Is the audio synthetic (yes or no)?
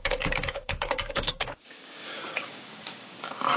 yes